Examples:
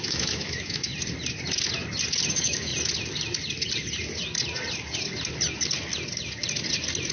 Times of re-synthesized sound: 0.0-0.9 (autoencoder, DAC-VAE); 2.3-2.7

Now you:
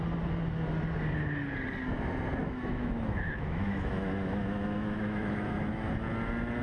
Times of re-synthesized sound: 2.4-5.9 (autoencoder, DAC-VAE)

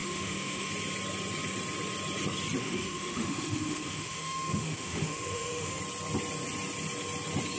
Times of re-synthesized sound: 0.0-0.7 (autoencoder, DAC-VAE); 2.6-5.8

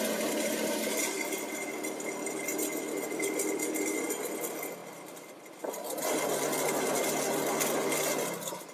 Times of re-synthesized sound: none

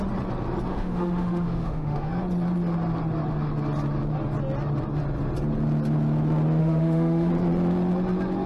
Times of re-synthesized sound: 0.7-2.1 (autoencoder, DAC-VAE); 6.6-7.3

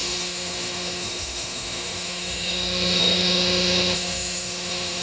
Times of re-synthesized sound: 0.0-5.0 (autoencoder, DAC-VAE)